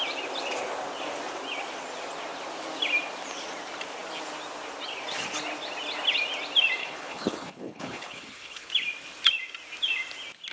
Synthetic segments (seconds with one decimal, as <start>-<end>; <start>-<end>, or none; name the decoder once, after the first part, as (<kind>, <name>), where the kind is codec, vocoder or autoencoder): 6.8-8.7 (codec, HILCodec)